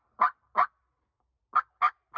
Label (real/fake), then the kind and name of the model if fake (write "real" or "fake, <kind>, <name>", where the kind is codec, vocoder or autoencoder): real